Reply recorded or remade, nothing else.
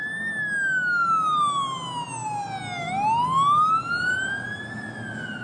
recorded